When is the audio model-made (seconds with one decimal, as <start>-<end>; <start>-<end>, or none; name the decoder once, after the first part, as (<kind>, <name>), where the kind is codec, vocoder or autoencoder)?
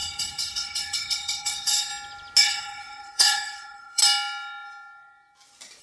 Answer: 0.0-1.9 (codec, HILCodec); 2.4-4.0